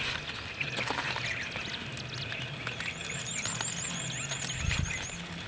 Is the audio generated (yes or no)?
no